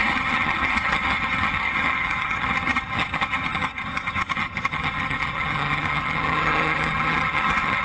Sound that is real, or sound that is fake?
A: fake